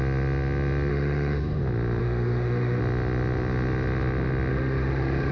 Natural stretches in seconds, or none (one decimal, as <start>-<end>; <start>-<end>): 0.0-0.9; 1.6-2.0; 2.8-4.5